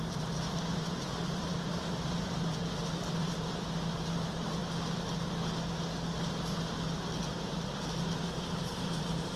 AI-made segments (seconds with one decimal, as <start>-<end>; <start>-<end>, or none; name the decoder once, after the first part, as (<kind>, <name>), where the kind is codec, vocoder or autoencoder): 0.0-4.6 (vocoder, BigVGAN v2); 8.1-9.4